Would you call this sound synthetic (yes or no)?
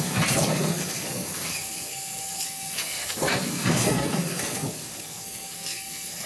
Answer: yes